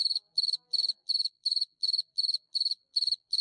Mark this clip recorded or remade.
remade